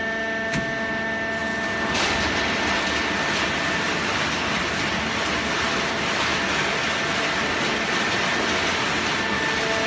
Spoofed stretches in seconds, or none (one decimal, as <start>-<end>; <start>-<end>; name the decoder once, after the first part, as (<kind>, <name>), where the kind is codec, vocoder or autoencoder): none